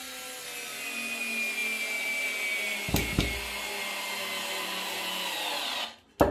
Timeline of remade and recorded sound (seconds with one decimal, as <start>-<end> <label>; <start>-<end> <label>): 0.0-6.3 recorded